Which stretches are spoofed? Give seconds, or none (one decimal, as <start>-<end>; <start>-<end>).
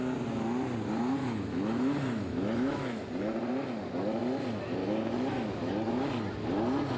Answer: 1.2-3.0; 4.8-6.1